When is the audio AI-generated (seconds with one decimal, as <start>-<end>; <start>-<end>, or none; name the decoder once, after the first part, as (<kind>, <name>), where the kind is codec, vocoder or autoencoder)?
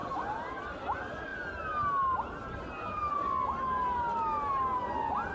none